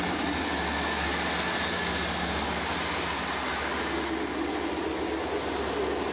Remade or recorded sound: recorded